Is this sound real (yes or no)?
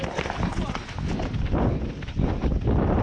yes